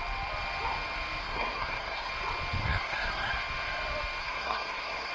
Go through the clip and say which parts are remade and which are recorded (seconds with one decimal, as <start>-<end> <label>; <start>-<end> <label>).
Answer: 0.0-1.2 recorded; 1.2-2.1 remade; 2.1-2.6 recorded; 2.6-3.3 remade; 3.3-4.2 recorded; 4.2-5.1 remade